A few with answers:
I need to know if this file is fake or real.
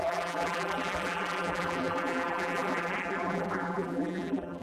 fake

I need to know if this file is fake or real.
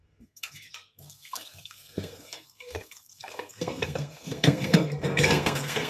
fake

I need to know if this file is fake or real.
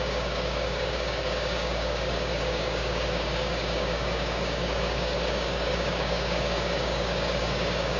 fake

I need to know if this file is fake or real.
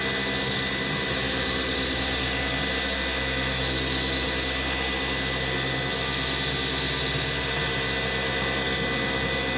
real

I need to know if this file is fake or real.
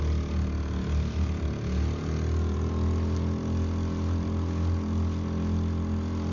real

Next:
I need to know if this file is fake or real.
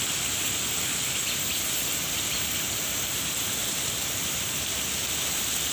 real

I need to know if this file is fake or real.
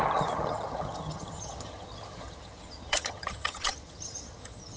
fake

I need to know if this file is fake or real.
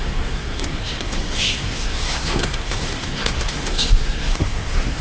fake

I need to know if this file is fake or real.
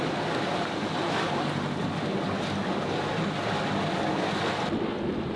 real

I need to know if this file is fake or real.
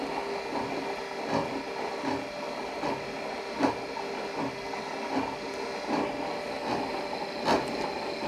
real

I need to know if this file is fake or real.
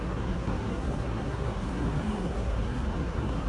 fake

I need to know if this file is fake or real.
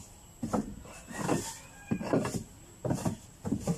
real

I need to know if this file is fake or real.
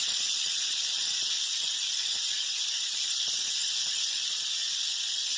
fake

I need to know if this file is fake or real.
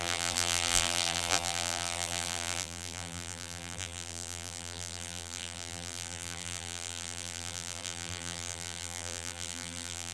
fake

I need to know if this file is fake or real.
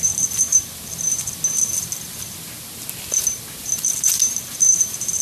real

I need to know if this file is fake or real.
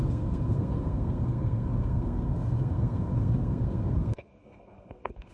fake